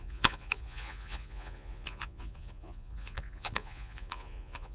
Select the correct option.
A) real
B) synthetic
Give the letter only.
B